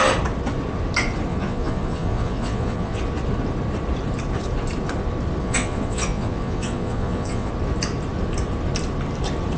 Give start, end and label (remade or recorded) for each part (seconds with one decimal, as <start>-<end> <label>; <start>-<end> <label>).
0.0-1.3 recorded; 1.3-3.0 remade; 3.0-5.4 recorded; 5.4-7.5 remade; 7.5-9.6 recorded